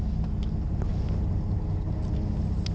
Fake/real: real